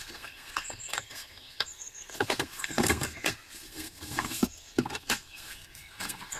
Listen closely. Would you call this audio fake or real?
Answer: fake